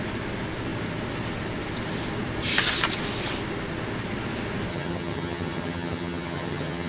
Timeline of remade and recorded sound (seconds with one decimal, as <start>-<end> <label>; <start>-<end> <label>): 0.0-4.7 recorded; 4.7-6.9 remade